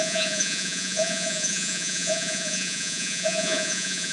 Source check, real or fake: fake